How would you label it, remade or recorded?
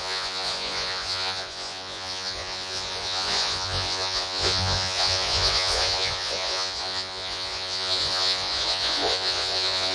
remade